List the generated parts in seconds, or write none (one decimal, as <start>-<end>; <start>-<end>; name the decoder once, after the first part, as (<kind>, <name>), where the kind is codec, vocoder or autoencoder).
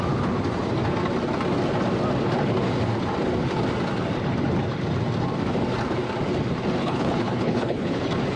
6.8-8.0 (codec, HILCodec)